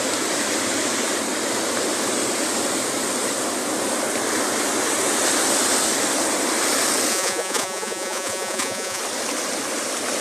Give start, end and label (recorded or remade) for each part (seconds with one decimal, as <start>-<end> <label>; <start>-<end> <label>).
0.0-7.1 recorded; 7.1-9.0 remade; 9.0-10.2 recorded